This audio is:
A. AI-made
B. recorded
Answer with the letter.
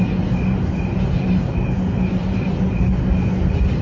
B